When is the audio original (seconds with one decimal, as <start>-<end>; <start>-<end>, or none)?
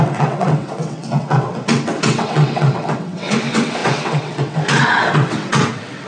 none